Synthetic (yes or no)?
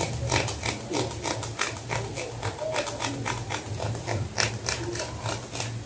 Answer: no